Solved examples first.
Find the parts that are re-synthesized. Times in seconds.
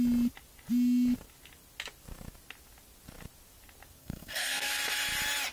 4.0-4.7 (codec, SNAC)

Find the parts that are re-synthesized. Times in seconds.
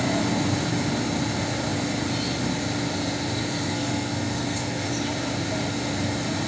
3.4-4.9 (codec, SNAC)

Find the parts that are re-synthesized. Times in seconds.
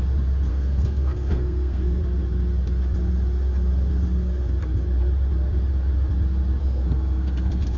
0.5-2.0 (codec, SNAC); 6.6-7.8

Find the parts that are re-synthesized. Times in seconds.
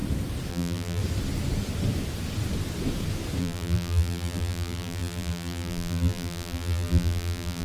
0.5-1.0 (vocoder, BigVGAN v2); 3.4-7.6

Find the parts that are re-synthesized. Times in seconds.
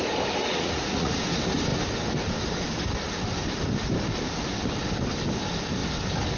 0.4-1.2 (vocoder, Vocos)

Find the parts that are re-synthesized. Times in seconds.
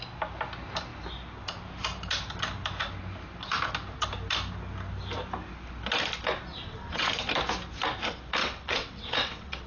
6.5-7.1 (vocoder, WaveNeXt); 8.4-9.7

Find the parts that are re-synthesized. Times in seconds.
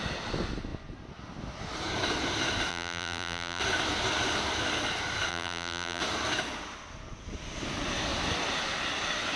2.7-3.6 (vocoder, BigVGAN v2); 5.3-6.0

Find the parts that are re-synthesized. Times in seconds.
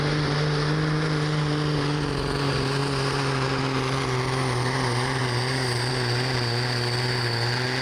none